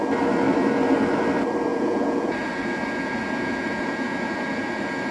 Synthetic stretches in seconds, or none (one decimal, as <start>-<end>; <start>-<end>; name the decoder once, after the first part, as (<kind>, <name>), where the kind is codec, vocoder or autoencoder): 1.7-5.1 (vocoder, Vocos)